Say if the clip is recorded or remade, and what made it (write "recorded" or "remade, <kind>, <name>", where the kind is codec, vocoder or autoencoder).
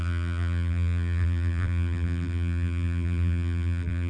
remade, vocoder, BigVGAN v2